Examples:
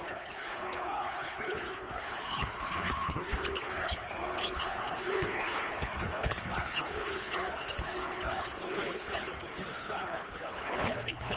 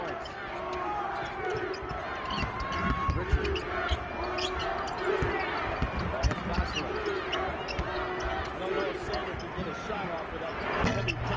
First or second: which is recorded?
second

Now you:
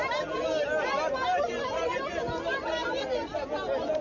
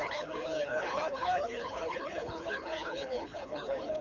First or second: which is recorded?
first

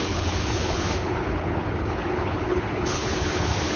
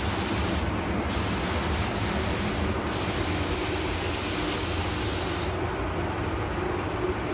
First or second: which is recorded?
second